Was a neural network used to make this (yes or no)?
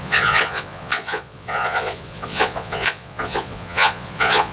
yes